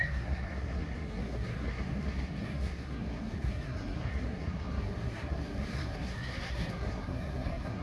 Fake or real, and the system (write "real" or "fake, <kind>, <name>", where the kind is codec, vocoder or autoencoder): fake, codec, SNAC